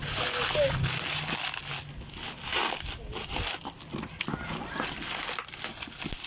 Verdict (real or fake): real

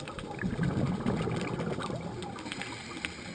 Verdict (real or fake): real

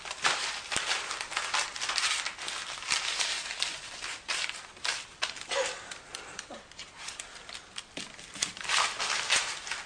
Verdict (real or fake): real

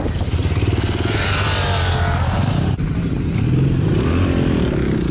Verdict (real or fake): real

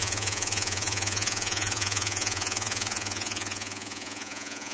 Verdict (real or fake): fake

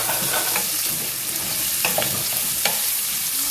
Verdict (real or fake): real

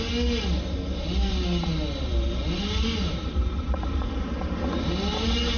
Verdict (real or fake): real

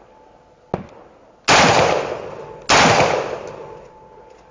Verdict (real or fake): real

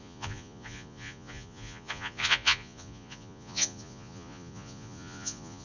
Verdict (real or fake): fake